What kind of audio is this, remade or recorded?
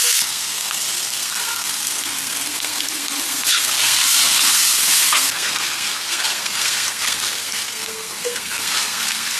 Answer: remade